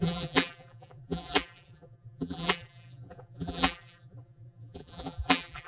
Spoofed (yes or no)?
yes